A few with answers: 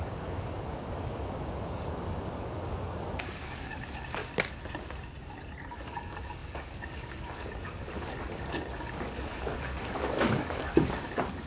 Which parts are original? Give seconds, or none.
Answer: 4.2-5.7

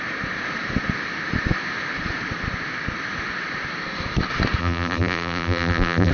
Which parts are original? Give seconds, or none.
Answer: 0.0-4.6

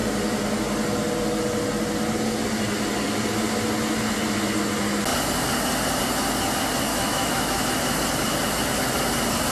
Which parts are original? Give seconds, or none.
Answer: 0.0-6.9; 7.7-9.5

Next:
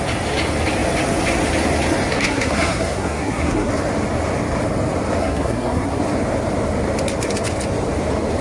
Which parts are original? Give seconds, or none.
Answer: 0.0-2.1; 3.7-5.2; 6.0-8.4